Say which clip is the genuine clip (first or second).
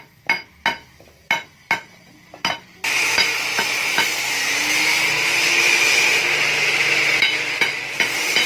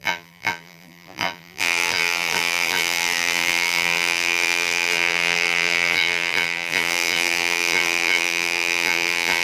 first